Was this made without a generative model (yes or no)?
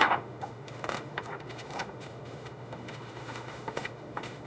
no